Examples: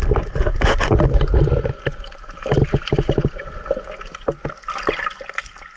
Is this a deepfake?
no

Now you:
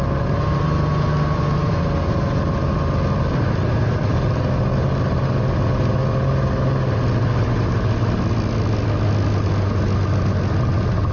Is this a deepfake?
no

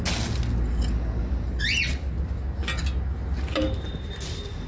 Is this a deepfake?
no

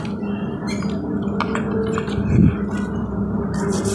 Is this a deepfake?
no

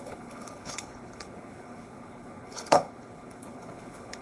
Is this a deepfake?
yes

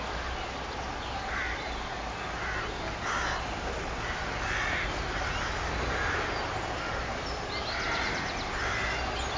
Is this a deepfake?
no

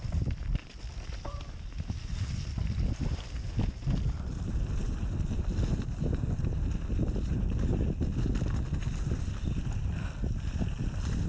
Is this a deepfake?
yes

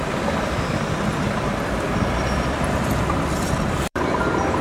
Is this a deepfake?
yes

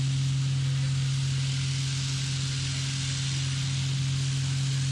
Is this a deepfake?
no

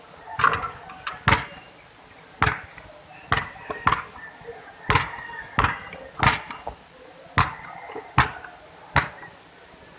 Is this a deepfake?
no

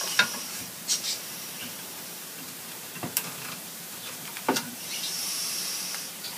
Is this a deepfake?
yes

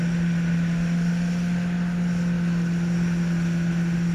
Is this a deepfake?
no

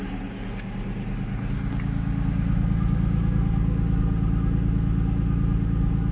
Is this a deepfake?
no